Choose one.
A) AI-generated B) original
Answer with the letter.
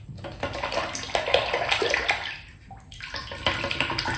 B